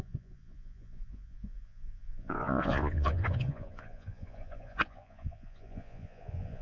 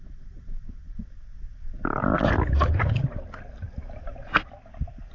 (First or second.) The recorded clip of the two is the second